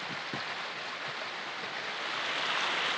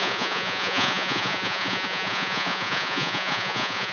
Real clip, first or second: first